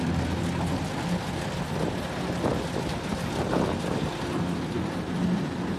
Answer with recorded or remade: recorded